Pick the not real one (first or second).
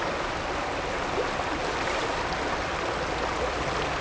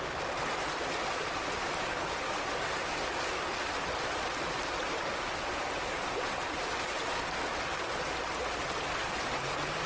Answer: first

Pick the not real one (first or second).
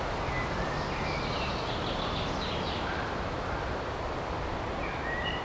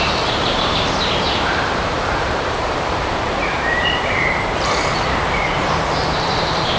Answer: second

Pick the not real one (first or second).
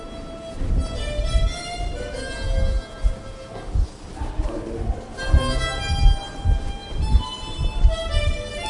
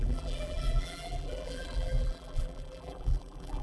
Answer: second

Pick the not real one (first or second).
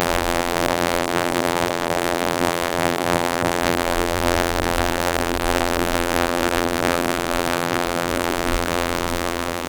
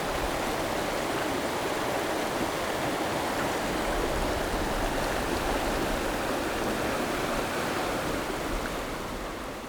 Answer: first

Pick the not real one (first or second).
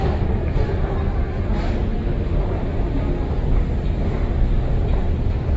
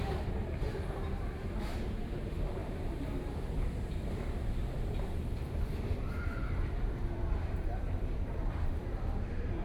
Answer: second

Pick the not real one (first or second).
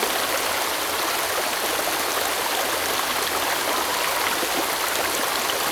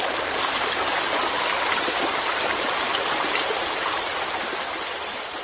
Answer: second